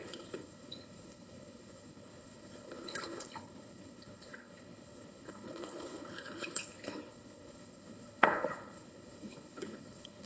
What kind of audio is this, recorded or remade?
remade